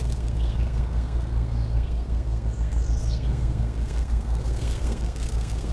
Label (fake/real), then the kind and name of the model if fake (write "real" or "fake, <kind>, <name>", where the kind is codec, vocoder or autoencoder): fake, codec, SNAC